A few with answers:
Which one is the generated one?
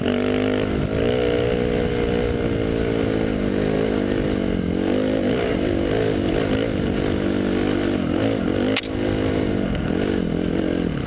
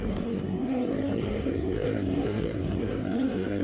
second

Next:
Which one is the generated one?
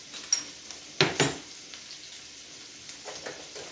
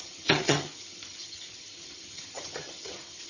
second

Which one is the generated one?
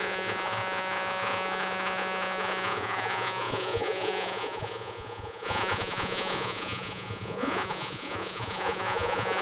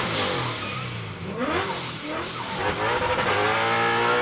first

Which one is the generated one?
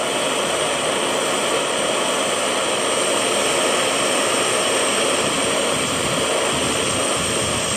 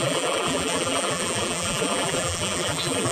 second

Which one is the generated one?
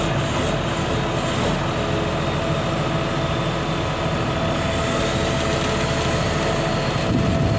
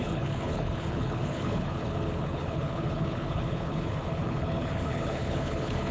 second